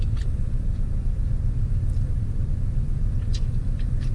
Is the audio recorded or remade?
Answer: remade